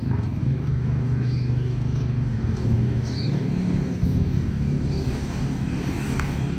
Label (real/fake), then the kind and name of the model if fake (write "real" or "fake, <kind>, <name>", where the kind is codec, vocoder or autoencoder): fake, codec, DAC